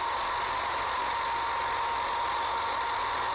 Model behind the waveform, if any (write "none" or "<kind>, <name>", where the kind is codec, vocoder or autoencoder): none